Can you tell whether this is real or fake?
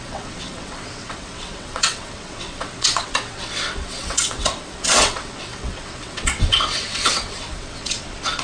fake